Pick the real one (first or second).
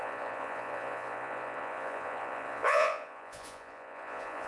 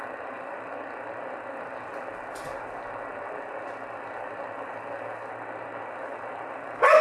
second